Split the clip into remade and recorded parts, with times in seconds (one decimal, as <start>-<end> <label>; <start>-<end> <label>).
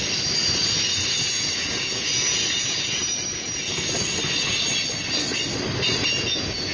0.0-1.1 recorded; 1.1-3.0 remade; 3.0-6.1 recorded; 6.1-6.7 remade